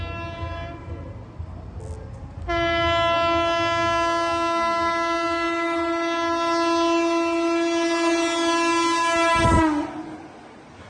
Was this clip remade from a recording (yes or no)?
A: no